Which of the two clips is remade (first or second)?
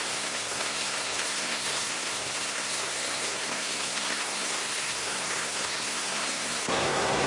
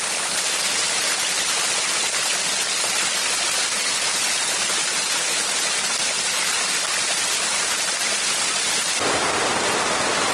first